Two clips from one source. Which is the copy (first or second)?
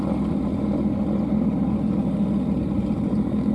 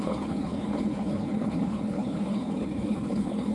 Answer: second